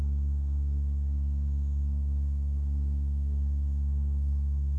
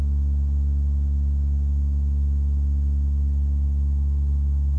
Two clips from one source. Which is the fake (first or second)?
first